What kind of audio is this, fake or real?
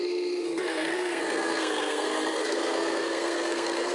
fake